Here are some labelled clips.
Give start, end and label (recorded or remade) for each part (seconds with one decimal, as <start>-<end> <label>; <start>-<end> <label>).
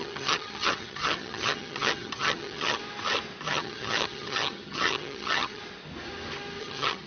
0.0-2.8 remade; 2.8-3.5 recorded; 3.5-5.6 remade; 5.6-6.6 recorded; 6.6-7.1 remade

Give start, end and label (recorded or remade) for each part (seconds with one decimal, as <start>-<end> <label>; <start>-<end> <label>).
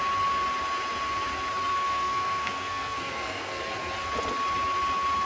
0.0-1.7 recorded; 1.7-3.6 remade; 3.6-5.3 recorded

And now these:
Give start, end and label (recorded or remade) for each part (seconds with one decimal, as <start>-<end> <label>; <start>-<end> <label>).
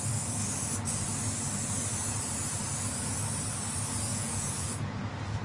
0.0-4.1 recorded; 4.1-5.4 remade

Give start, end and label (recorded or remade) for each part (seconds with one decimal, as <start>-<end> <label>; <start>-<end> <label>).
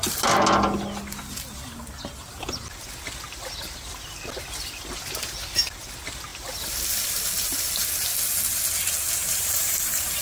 0.0-9.2 recorded; 9.2-10.2 remade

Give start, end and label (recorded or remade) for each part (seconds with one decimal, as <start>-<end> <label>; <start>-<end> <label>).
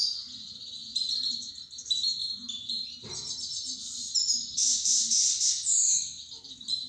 0.0-0.8 recorded; 0.8-1.6 remade; 1.6-2.2 recorded; 2.2-5.5 remade; 5.5-6.9 recorded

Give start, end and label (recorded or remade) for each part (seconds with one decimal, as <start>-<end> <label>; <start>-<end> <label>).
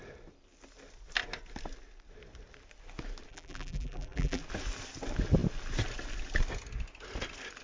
0.0-3.3 recorded; 3.3-4.4 remade; 4.4-7.6 recorded